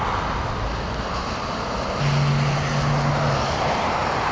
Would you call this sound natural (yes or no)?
yes